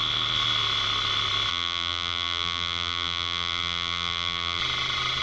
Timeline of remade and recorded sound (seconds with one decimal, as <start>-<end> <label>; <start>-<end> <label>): 0.0-1.5 recorded; 1.5-4.6 remade; 4.6-5.2 recorded